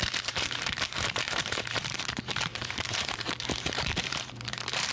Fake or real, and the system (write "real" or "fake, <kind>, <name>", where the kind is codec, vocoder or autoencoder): fake, vocoder, BigVGAN v2